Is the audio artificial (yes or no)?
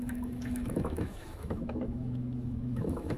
yes